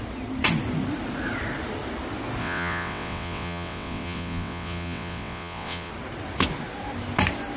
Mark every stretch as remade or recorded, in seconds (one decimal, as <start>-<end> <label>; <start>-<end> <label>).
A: 0.0-2.4 recorded; 2.4-5.9 remade; 5.9-7.6 recorded